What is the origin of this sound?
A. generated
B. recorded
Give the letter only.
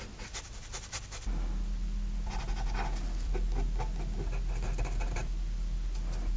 B